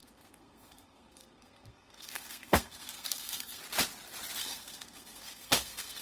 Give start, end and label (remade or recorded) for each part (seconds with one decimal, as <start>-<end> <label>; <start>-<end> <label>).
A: 0.0-3.6 remade; 3.6-4.4 recorded; 4.4-6.0 remade